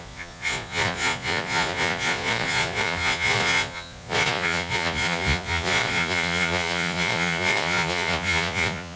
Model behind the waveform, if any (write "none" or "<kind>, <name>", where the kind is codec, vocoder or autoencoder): vocoder, Vocos